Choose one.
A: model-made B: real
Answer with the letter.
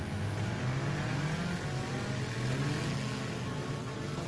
B